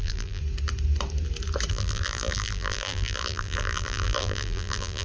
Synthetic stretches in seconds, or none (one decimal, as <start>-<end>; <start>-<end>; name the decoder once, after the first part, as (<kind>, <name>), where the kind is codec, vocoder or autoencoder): 0.0-0.4 (vocoder, BigVGAN v2); 1.7-5.0